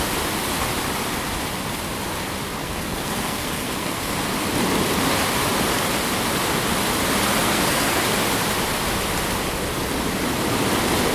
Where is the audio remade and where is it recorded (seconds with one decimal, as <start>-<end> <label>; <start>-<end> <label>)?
0.0-2.6 recorded; 2.6-4.1 remade; 4.1-7.4 recorded; 7.4-8.0 remade; 8.0-11.1 recorded